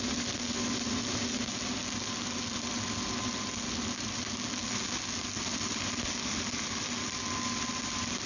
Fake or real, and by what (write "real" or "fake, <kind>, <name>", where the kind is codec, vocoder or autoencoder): real